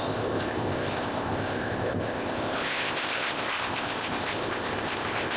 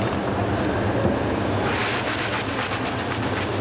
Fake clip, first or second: first